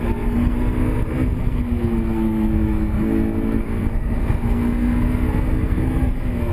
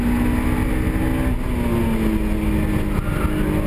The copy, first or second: first